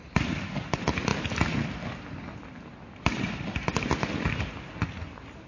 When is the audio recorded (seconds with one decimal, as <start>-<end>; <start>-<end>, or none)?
0.0-5.5